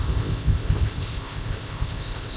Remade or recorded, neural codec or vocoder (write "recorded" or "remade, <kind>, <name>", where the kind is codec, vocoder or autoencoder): remade, codec, ZipCodec